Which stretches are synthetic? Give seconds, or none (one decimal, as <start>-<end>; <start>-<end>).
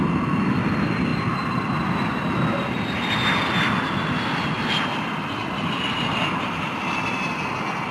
none